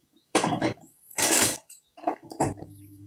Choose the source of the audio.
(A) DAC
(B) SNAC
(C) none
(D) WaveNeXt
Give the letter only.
A